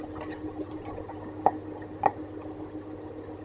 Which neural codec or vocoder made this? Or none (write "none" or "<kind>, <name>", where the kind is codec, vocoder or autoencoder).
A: none